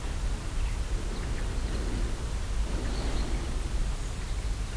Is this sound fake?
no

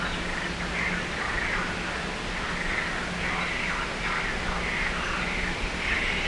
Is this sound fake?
no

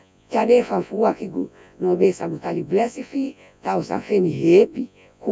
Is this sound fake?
yes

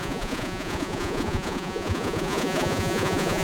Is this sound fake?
yes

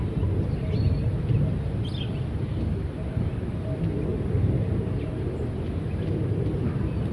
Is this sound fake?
no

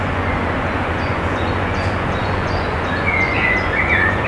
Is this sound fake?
yes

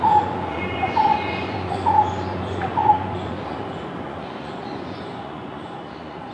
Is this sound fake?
yes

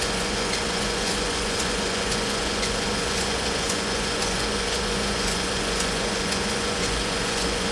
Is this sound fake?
yes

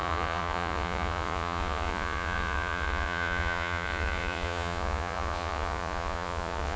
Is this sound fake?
yes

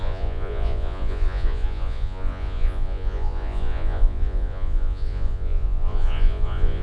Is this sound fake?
yes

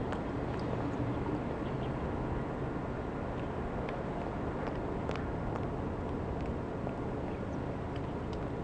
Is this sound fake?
no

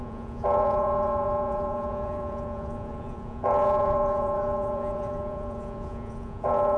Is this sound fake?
yes